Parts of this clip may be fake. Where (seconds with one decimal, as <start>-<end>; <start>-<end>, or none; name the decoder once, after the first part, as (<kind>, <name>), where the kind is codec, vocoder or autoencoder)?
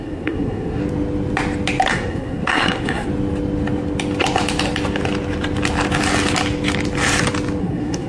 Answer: 0.0-0.8 (codec, SNAC); 1.9-3.1; 7.6-8.1